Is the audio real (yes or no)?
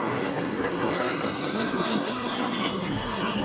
no